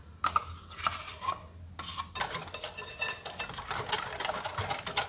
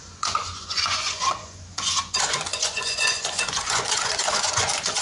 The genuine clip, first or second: first